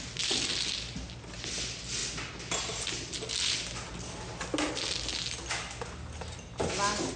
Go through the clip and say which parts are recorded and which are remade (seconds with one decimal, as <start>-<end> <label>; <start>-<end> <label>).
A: 0.0-7.2 recorded